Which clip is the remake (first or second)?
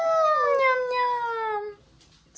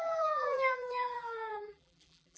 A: second